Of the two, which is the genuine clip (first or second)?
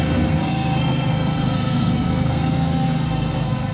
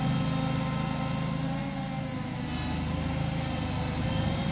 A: second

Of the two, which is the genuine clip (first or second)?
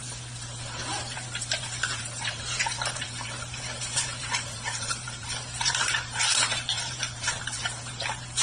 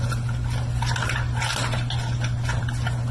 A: second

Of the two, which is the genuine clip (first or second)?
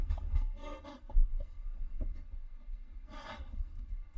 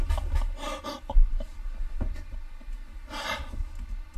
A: second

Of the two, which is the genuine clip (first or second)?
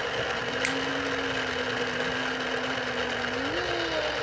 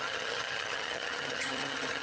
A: first